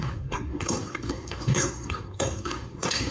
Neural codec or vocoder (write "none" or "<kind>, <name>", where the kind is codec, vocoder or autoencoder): codec, SNAC